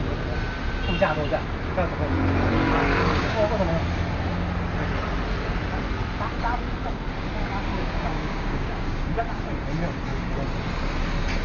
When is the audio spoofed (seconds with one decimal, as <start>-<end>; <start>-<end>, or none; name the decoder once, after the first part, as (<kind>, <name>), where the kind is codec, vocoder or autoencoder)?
2.9-3.5 (codec, DAC); 7.7-9.2